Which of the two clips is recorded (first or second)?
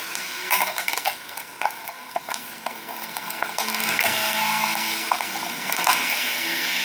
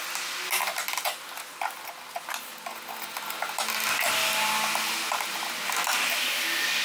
second